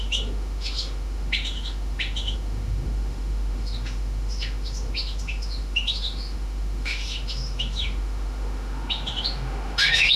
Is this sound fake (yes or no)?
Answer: yes